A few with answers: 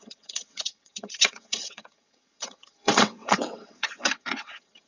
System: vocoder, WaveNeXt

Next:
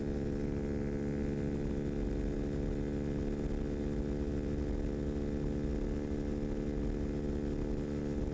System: none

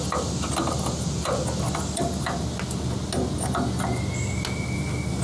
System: none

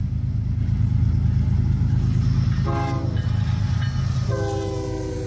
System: none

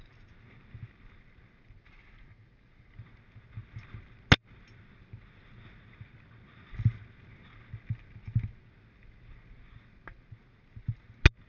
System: none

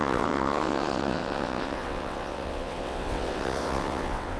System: vocoder, WaveNeXt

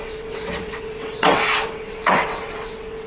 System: vocoder, WaveNeXt